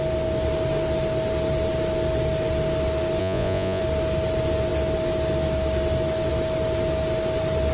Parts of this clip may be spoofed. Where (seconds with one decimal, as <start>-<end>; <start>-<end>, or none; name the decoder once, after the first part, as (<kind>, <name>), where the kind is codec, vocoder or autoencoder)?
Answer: 3.2-3.8 (vocoder, Vocos)